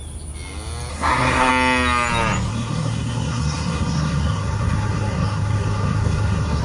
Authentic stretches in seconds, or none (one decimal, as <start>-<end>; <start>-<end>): 0.0-0.9; 1.5-2.5